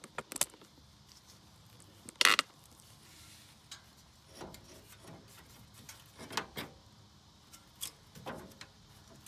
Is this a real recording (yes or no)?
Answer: yes